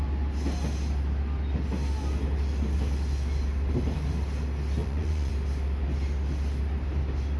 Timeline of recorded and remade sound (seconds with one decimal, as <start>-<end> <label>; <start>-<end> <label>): 0.0-4.8 recorded; 4.8-5.3 remade; 5.3-7.4 recorded